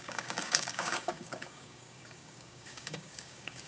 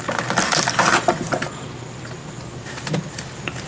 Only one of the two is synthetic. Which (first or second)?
first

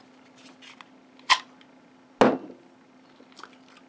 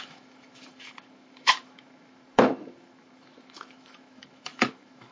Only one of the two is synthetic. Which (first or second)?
second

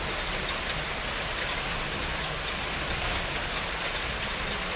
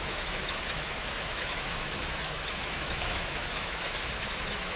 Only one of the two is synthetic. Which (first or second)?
second